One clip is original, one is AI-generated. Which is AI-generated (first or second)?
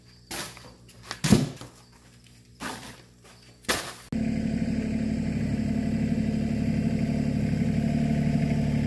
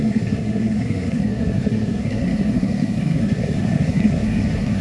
second